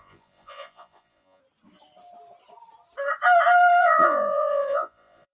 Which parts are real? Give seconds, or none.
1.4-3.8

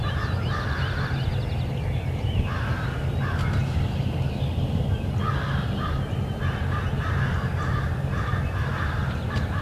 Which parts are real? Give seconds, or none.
0.0-9.6

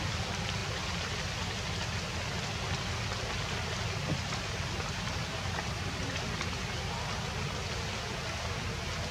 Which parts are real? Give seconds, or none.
0.0-9.1

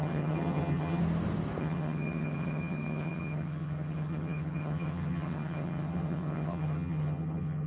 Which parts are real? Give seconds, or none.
1.0-1.6

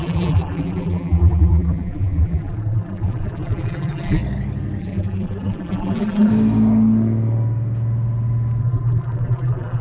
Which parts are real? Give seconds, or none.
4.2-4.8; 6.3-8.6